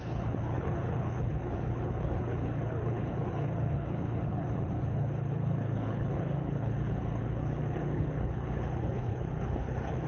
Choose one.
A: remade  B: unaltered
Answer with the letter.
A